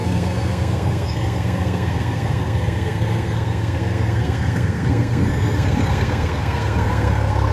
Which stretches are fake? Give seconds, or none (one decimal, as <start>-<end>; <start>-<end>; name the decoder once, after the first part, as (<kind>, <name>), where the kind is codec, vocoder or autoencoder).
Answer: 0.0-7.5 (codec, SNAC)